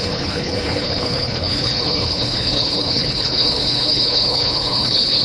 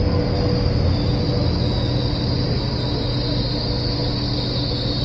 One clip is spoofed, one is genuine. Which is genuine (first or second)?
second